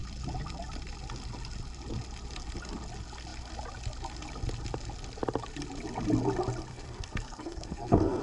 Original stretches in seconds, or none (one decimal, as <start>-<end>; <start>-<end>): 0.0-6.7